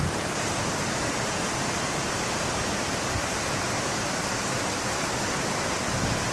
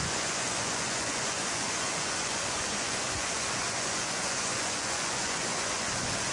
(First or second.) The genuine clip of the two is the first